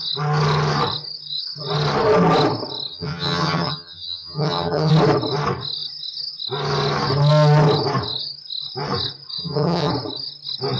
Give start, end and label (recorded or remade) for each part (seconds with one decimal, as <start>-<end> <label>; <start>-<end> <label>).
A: 0.0-2.9 recorded; 2.9-4.9 remade; 4.9-9.4 recorded; 9.4-9.9 remade; 9.9-10.8 recorded